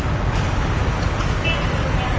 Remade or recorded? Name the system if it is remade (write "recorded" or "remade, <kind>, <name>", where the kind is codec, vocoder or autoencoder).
recorded